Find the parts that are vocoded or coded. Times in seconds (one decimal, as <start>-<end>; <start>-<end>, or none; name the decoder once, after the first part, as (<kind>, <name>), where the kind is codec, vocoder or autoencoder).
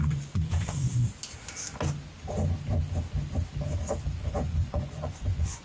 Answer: 0.0-0.9 (vocoder, Vocos); 4.3-5.6